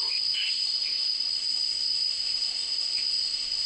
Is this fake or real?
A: fake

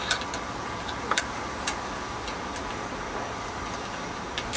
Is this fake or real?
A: real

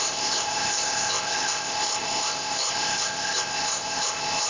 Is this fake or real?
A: fake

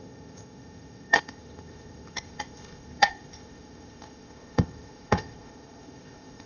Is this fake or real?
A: fake